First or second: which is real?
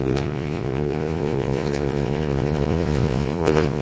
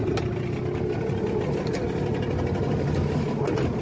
second